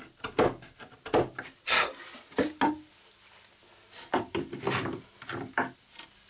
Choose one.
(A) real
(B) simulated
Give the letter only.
A